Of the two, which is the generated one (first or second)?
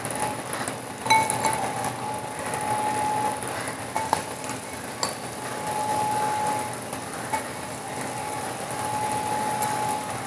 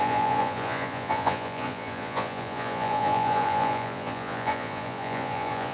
second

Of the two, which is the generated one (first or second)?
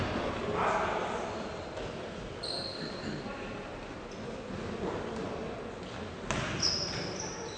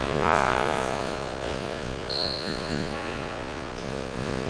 second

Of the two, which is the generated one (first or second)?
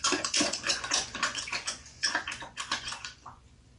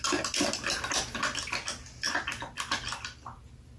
first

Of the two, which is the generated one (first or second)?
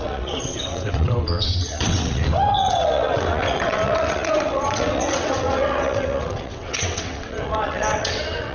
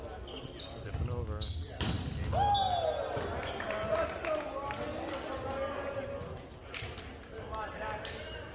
first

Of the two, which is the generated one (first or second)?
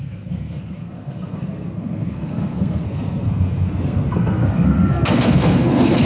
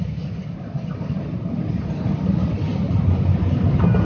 first